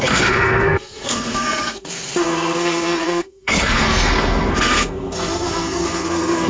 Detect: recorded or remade remade